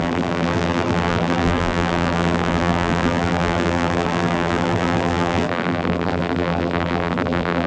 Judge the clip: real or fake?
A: fake